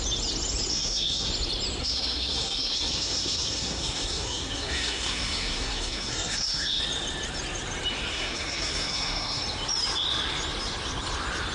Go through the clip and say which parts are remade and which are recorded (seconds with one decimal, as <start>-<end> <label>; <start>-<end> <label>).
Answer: 0.0-0.7 recorded; 0.7-1.3 remade; 1.3-1.8 recorded; 1.8-6.8 remade; 6.8-8.1 recorded; 8.1-9.4 remade; 9.4-11.5 recorded